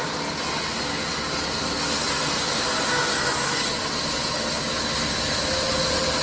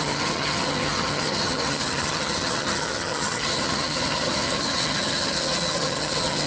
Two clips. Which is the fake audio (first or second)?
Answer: second